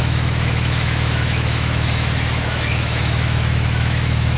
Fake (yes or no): yes